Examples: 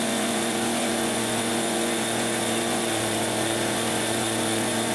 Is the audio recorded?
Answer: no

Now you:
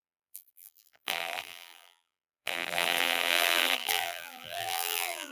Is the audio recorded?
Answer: no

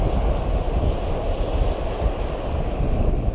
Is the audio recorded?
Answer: yes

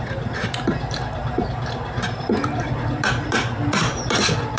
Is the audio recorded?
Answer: no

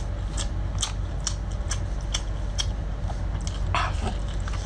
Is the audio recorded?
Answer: yes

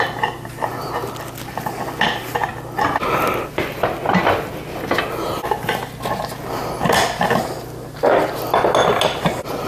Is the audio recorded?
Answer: yes